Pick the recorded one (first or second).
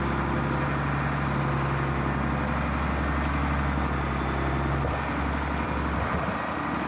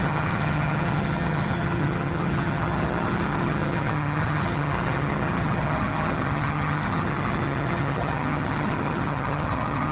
first